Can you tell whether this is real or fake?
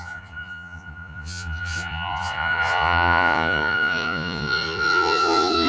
fake